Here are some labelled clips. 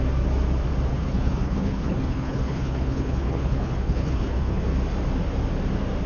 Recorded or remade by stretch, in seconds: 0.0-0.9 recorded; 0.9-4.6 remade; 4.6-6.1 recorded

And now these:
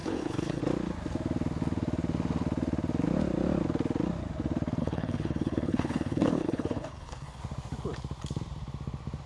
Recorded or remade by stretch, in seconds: 0.0-0.6 remade; 0.6-4.8 recorded; 4.8-7.4 remade; 7.4-9.3 recorded

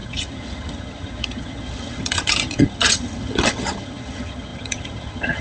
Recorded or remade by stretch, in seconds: 0.0-5.4 remade

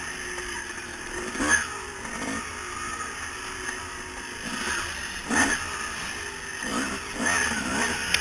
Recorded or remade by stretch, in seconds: 0.0-8.2 recorded

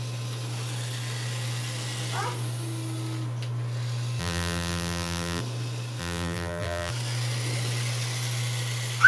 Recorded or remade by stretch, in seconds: 0.0-4.2 recorded; 4.2-5.4 remade; 5.4-6.0 recorded; 6.0-6.9 remade; 6.9-9.1 recorded